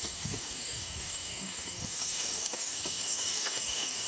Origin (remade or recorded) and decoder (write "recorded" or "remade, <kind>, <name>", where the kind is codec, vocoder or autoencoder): remade, codec, DAC